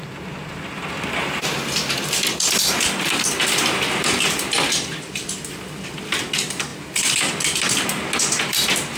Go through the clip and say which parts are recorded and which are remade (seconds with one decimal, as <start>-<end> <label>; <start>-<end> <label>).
0.0-6.7 remade; 6.7-8.4 recorded; 8.4-9.0 remade